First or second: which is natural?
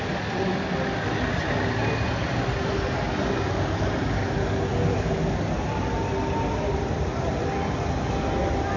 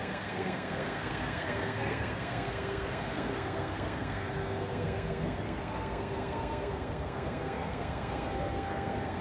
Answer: first